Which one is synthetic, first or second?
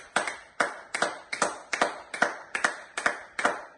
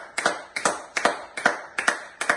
first